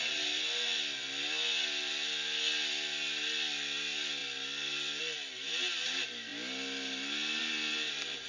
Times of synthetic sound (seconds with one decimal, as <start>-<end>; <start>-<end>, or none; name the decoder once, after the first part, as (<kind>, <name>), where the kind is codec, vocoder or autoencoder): none